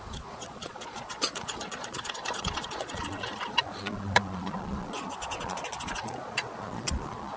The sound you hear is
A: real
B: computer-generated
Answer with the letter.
B